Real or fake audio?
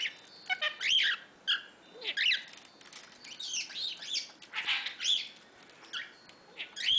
real